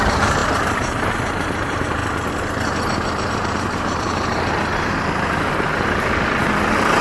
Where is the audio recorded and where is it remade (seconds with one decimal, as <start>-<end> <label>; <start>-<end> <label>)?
0.0-2.0 remade; 2.0-3.2 recorded; 3.2-7.0 remade